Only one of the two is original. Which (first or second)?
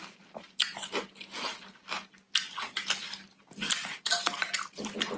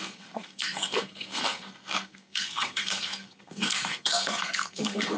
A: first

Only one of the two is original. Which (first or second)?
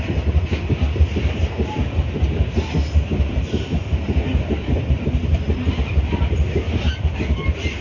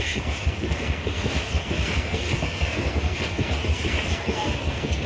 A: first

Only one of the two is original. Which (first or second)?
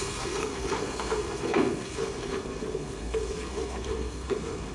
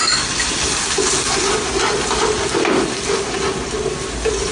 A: second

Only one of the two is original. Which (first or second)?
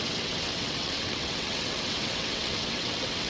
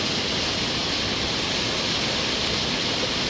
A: second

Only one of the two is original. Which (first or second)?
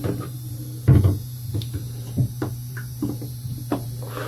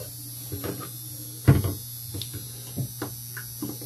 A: second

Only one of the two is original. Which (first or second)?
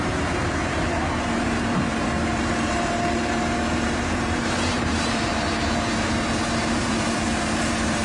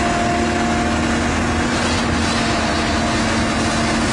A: second